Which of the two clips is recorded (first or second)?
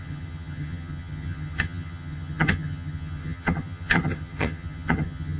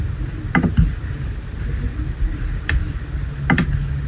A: second